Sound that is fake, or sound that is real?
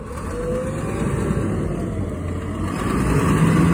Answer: real